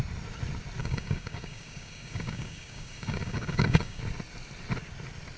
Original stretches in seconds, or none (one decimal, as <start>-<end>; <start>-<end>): 0.0-0.8; 4.0-5.4